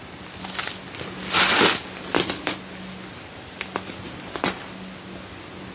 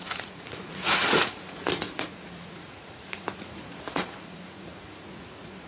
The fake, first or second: second